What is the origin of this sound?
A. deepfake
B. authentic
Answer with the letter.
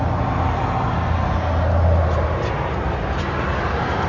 B